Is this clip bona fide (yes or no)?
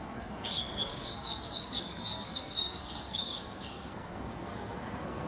no